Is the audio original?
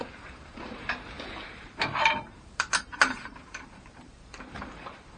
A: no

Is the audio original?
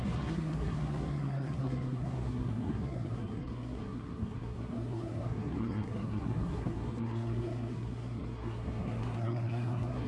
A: no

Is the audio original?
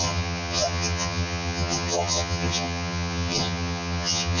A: no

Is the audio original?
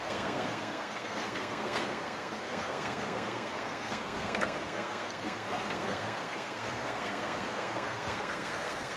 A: no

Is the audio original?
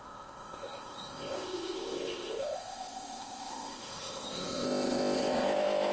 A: no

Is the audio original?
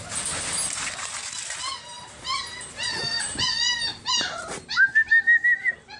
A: yes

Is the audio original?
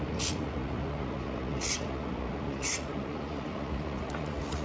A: no